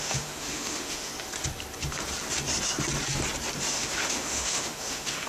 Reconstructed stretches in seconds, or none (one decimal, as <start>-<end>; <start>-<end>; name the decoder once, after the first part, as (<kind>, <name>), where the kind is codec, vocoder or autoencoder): 0.0-1.1 (autoencoder, DAC-VAE); 3.7-5.3